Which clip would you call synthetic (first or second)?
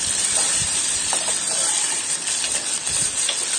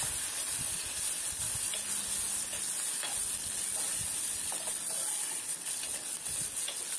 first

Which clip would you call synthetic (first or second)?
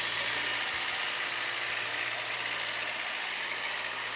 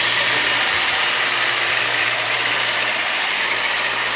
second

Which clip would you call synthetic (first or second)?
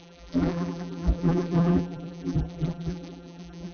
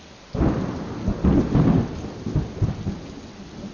first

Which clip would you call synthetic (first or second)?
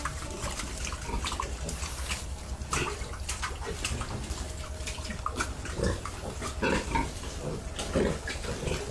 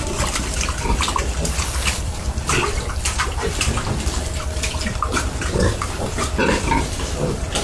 second